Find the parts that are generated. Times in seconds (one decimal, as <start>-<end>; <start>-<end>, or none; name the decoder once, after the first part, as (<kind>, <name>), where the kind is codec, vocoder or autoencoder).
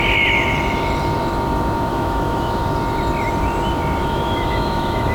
1.9-2.6 (autoencoder, DAC-VAE); 4.0-5.1